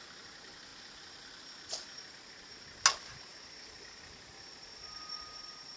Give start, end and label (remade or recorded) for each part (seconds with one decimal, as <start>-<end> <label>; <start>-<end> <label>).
0.0-5.8 recorded